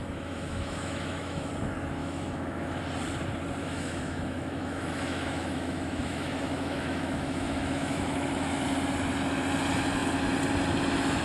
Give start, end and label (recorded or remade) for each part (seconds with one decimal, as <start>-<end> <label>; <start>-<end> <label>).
0.0-1.5 remade; 1.5-2.0 recorded; 2.0-2.8 remade; 2.8-3.6 recorded; 3.6-8.6 remade; 8.6-11.2 recorded